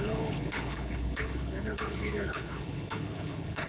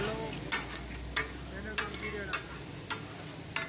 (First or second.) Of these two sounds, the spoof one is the first